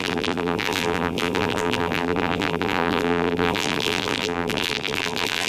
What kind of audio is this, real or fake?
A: fake